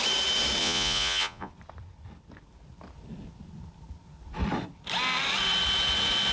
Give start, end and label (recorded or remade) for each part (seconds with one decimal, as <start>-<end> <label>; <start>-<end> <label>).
0.0-0.6 recorded; 0.6-1.5 remade; 1.5-6.3 recorded